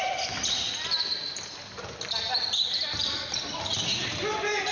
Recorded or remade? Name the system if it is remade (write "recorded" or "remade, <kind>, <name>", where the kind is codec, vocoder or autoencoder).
recorded